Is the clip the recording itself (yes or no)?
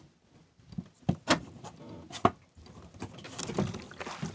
yes